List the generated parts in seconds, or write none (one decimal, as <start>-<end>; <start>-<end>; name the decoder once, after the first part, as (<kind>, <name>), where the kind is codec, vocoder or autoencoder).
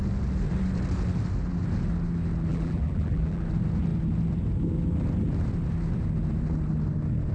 2.5-3.4 (vocoder, BigVGAN v2)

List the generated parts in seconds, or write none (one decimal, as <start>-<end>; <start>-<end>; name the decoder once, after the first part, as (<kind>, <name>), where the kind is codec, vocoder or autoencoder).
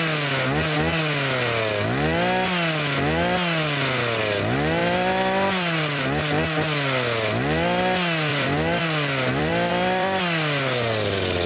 4.8-6.0 (vocoder, BigVGAN v2); 8.3-10.2